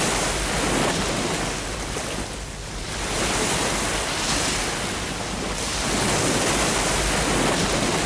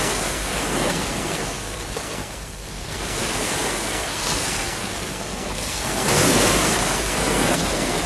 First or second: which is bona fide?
first